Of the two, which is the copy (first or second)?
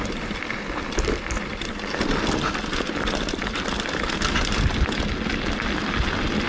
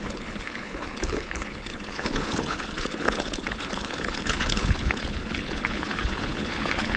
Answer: second